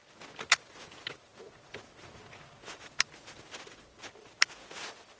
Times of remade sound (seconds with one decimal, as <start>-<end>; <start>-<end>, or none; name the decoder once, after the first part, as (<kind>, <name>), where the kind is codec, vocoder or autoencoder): none